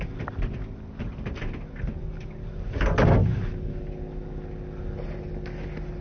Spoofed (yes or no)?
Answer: no